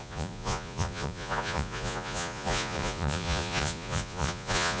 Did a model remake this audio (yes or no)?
yes